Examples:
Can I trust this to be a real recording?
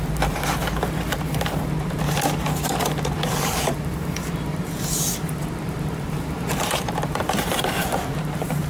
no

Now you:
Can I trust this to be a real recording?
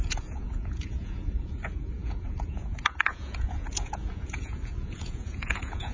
no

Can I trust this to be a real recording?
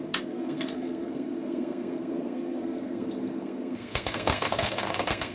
no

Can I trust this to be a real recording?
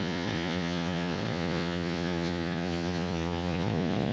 no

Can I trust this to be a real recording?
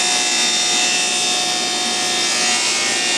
yes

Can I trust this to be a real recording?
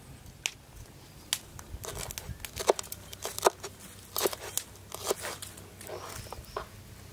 yes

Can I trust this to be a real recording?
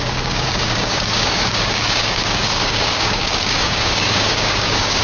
no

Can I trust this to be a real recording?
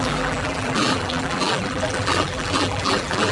no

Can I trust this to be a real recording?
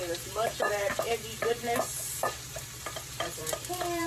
no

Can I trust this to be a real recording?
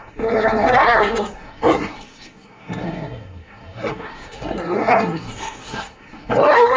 no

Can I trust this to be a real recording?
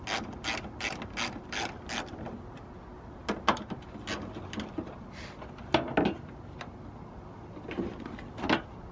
yes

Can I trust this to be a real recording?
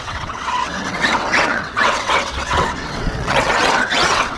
no